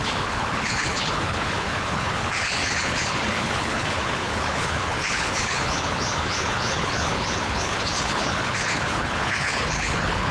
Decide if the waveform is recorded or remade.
remade